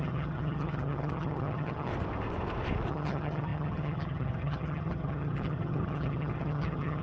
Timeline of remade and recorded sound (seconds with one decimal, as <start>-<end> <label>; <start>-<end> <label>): 0.0-1.9 remade; 1.9-2.9 recorded; 2.9-7.0 remade